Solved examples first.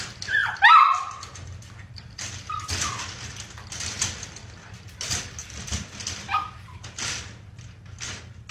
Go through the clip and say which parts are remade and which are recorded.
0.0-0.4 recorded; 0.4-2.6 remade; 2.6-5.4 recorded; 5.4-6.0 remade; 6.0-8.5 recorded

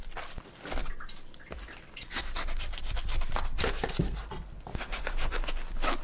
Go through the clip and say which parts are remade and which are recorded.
0.0-4.7 recorded; 4.7-5.5 remade; 5.5-6.0 recorded

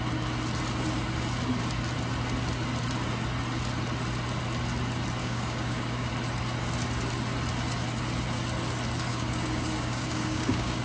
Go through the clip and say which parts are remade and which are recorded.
0.0-5.2 recorded; 5.2-6.1 remade; 6.1-9.1 recorded; 9.1-10.8 remade

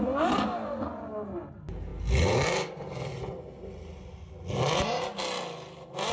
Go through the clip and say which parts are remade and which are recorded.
0.0-6.1 recorded

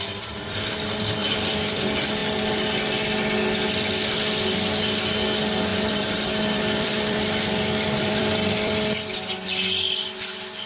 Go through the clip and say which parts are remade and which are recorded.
0.0-1.2 recorded; 1.2-1.8 remade; 1.8-5.7 recorded; 5.7-9.0 remade; 9.0-10.7 recorded

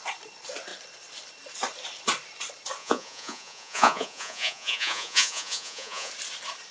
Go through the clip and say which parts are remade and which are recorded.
0.0-2.8 recorded; 2.8-6.1 remade; 6.1-6.7 recorded

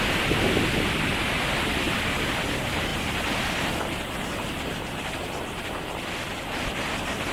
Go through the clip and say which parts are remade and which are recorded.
0.0-1.3 recorded; 1.3-2.0 remade; 2.0-2.9 recorded; 2.9-7.3 remade

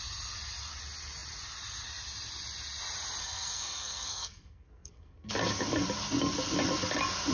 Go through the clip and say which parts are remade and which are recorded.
0.0-3.2 recorded; 3.2-5.3 remade; 5.3-7.3 recorded